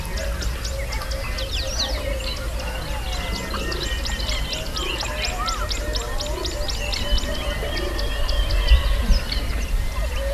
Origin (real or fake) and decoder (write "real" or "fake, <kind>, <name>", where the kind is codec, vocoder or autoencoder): real